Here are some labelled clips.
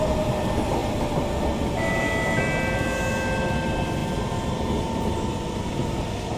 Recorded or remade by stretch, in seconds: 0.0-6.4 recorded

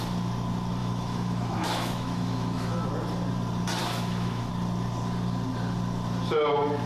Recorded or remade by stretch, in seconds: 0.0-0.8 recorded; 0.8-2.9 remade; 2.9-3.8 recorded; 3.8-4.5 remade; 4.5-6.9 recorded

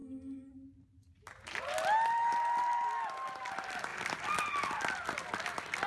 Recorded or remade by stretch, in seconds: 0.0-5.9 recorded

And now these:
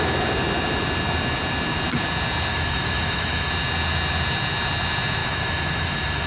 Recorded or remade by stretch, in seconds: 0.0-2.5 recorded; 2.5-3.5 remade; 3.5-5.2 recorded; 5.2-6.3 remade